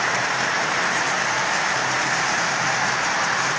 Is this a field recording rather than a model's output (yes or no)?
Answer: no